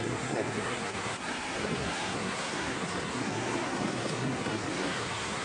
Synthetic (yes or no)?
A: yes